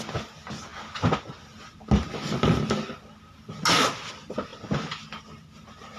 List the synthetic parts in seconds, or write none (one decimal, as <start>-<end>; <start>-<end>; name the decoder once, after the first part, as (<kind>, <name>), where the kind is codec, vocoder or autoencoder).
none